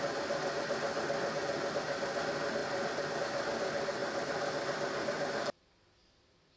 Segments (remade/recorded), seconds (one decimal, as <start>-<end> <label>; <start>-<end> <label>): 0.0-6.6 recorded